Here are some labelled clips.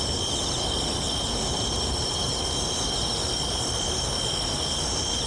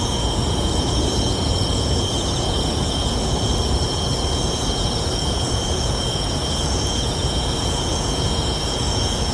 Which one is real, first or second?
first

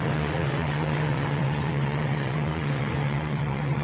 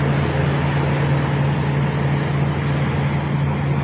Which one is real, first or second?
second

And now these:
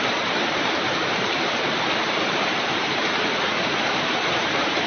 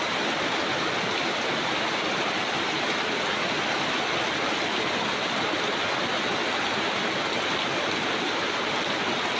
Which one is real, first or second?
second